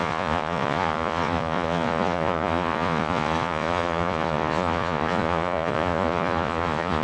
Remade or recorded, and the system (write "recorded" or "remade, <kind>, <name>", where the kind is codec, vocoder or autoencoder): remade, vocoder, Vocos